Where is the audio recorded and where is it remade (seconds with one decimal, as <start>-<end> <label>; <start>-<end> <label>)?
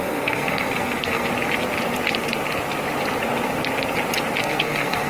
0.0-1.3 remade; 1.3-4.4 recorded; 4.4-5.1 remade